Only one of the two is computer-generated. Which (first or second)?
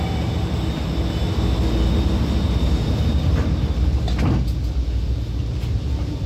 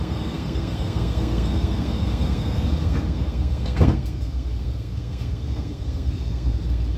second